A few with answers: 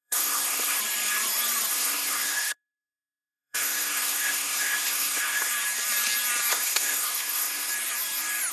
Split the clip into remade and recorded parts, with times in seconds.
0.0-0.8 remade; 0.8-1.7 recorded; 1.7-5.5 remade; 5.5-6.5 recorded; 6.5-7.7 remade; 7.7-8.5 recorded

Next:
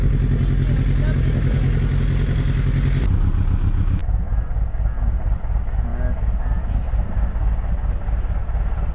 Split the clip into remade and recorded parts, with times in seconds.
0.0-8.9 recorded

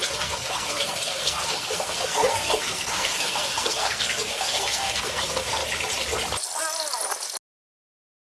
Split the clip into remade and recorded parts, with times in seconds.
0.0-5.6 remade; 5.6-7.5 recorded; 7.5-8.2 remade

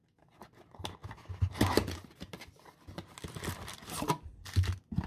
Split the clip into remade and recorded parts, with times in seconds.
0.0-5.1 recorded

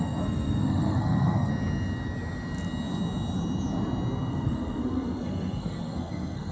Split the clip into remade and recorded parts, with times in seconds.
0.0-1.5 remade; 1.5-4.3 recorded; 4.3-6.5 remade